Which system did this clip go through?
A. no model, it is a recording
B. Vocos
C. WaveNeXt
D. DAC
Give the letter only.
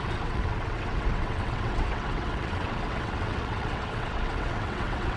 C